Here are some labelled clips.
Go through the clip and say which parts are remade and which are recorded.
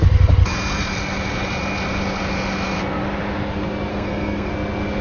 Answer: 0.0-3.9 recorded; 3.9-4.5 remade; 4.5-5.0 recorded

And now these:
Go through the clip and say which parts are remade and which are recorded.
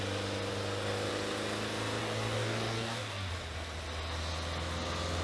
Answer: 0.0-2.0 recorded; 2.0-3.3 remade; 3.3-5.2 recorded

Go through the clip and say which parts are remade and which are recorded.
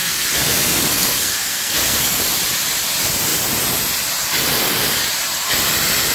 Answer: 0.0-2.2 remade; 2.2-6.1 recorded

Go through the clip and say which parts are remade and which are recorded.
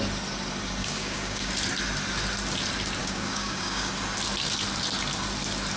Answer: 0.0-0.8 recorded; 0.8-1.5 remade; 1.5-3.0 recorded; 3.0-3.9 remade; 3.9-5.8 recorded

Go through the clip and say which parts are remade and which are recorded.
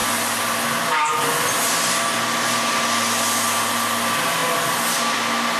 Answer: 0.0-5.6 recorded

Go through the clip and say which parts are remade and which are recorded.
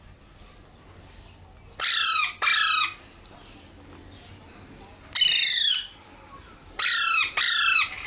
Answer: 0.0-8.1 recorded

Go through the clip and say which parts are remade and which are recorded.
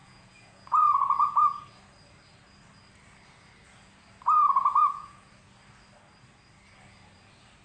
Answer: 0.0-1.6 remade; 1.6-4.6 recorded; 4.6-5.3 remade; 5.3-7.6 recorded